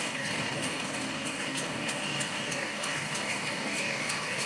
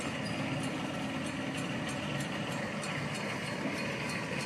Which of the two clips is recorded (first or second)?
second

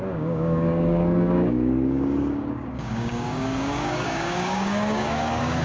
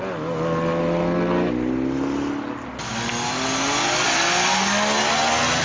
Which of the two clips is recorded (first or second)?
second